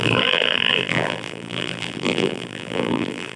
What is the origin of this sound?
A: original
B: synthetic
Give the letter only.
B